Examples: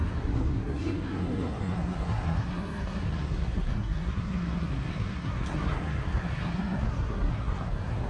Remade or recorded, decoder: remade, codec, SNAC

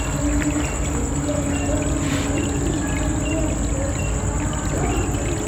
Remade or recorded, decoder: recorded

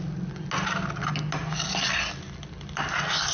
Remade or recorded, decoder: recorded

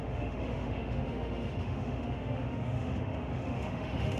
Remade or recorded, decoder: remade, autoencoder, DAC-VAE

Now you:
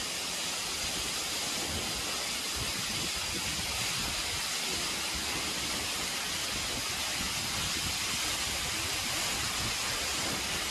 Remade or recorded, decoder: recorded